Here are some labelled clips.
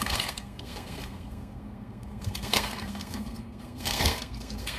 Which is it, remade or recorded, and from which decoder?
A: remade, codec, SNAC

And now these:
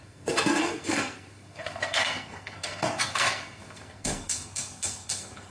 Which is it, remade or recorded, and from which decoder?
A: remade, codec, SNAC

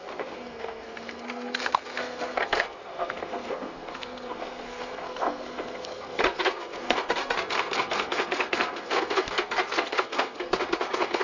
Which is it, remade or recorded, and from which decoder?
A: remade, codec, SNAC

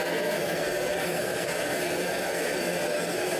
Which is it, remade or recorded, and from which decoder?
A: remade, codec, SNAC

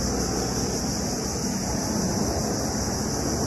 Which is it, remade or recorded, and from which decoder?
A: recorded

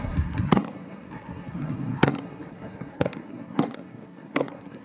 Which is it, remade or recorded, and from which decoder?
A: remade, codec, SNAC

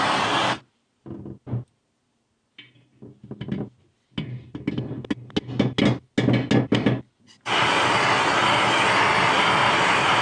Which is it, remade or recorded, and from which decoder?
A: recorded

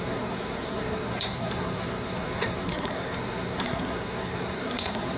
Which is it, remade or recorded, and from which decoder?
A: remade, codec, SNAC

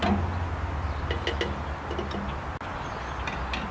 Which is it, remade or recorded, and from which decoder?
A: recorded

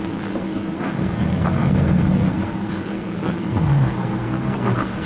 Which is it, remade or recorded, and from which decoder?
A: remade, codec, SNAC